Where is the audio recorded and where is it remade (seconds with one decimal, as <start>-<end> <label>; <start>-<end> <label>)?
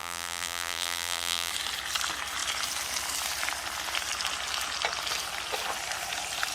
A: 0.0-1.5 remade; 1.5-6.5 recorded